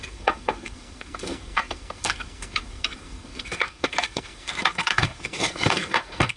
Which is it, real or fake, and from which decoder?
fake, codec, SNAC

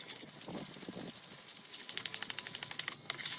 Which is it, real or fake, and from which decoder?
real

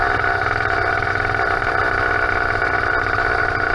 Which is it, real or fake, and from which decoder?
real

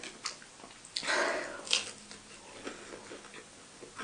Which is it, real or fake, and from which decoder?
real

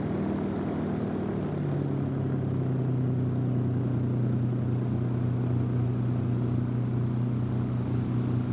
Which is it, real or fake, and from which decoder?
real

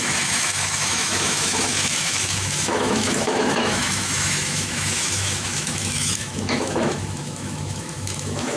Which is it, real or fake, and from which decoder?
fake, autoencoder, DAC-VAE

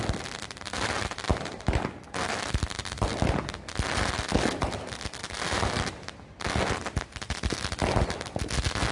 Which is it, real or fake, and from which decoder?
real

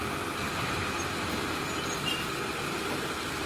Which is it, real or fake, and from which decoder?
real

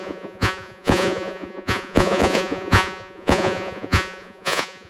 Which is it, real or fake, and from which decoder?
fake, vocoder, Vocos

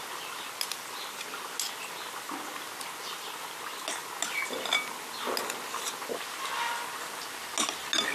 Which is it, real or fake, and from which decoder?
real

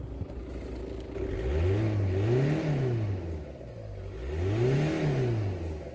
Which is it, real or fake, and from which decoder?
real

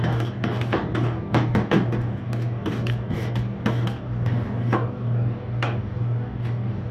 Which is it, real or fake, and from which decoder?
fake, codec, DAC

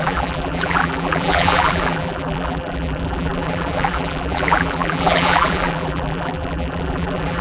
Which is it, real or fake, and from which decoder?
fake, vocoder, BigVGAN v2